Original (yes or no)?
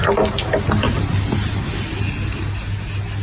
yes